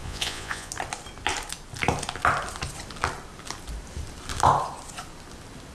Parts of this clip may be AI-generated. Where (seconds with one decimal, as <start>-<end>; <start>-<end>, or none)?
0.0-0.7